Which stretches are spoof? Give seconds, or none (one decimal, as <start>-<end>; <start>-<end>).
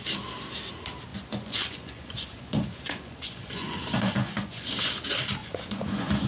1.1-4.9; 5.4-6.3